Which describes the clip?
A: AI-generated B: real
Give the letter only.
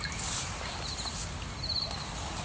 B